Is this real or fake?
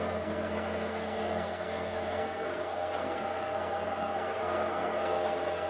fake